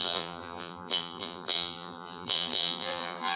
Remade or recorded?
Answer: remade